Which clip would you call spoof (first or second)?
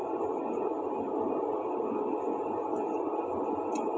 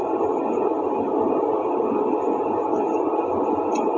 second